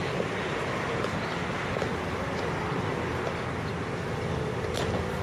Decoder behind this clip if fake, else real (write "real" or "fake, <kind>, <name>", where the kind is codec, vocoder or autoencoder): real